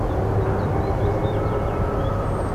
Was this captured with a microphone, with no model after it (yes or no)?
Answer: yes